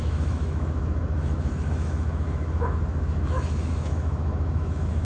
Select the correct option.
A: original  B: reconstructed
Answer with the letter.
B